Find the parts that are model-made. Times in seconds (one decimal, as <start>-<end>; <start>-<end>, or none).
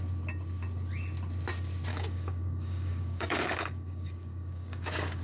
1.9-5.2